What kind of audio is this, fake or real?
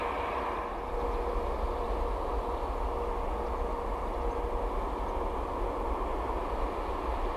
real